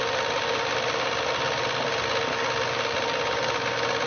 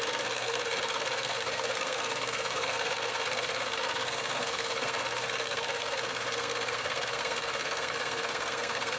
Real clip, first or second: first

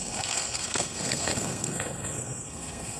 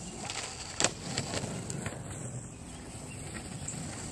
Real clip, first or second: second